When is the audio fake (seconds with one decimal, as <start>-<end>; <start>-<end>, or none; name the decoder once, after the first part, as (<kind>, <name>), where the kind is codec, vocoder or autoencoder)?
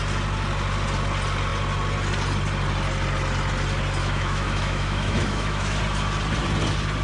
4.0-5.8 (autoencoder, DAC-VAE)